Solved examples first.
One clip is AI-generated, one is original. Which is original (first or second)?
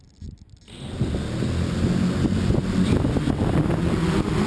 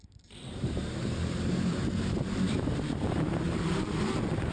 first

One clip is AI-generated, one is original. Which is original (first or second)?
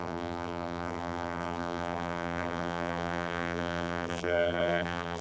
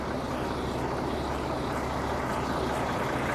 second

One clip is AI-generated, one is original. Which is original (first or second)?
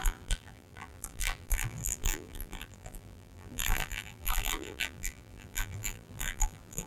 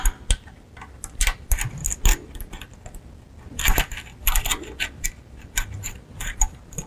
second